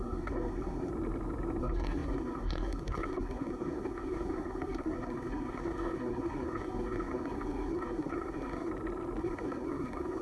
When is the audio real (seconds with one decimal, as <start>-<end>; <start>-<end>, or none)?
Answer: 0.9-1.6; 8.7-9.2